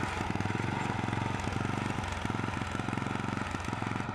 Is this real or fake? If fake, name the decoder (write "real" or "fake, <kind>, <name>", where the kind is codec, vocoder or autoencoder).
real